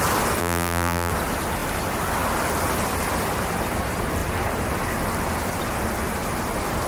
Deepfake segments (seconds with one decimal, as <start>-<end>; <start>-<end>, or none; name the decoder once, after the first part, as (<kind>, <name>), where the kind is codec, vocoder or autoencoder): 0.4-1.1 (vocoder, BigVGAN v2)